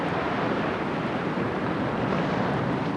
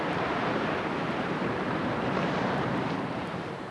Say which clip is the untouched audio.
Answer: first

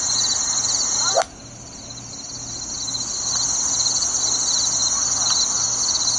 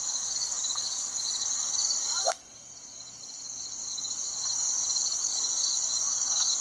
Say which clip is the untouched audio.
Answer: first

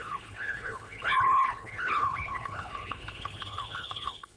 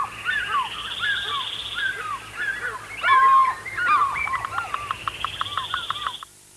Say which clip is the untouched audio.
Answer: second